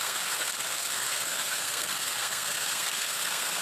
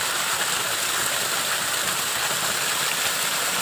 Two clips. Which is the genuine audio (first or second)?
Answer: second